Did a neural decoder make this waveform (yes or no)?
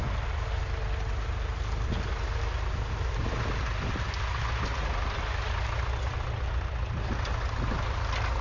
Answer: no